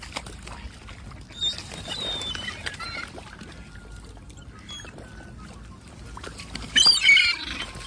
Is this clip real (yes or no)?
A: yes